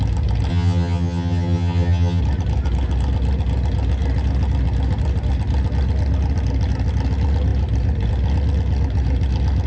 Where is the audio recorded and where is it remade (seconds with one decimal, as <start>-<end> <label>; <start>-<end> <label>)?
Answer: 0.0-0.5 recorded; 0.5-2.2 remade; 2.2-9.7 recorded